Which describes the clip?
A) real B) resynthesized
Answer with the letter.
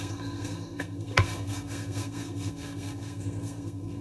B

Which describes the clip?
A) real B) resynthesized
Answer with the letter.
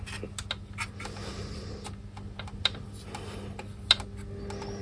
A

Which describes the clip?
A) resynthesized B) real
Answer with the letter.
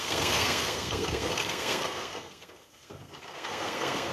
A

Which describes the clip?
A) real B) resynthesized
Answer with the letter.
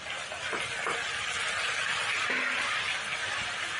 A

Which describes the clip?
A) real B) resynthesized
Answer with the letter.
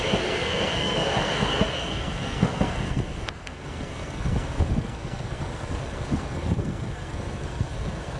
B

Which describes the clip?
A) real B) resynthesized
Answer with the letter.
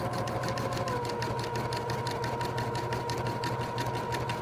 A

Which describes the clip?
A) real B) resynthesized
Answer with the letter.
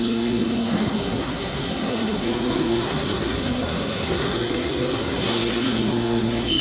B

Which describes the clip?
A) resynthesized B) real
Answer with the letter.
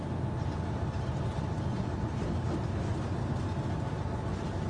B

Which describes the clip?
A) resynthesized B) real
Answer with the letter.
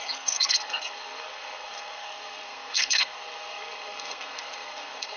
A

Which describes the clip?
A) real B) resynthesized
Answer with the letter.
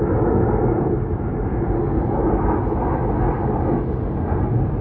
A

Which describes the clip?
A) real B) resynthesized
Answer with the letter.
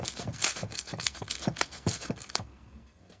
B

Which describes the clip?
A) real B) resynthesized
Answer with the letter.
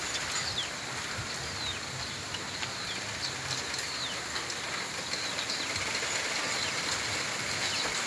A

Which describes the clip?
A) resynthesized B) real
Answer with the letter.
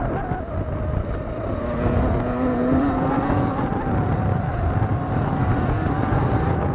B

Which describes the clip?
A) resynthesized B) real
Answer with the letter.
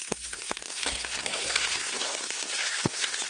A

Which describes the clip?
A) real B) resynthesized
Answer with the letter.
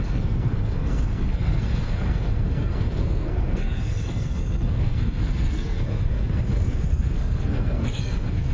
B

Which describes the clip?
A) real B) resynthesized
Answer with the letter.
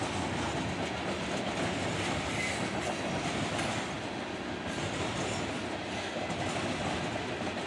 A